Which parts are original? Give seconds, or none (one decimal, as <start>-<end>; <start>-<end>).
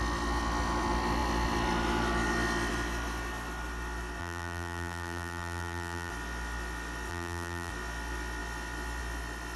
0.0-4.2; 6.1-7.1; 7.7-9.6